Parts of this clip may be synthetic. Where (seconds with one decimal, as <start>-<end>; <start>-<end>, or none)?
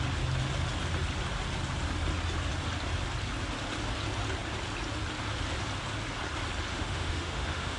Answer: 6.7-7.8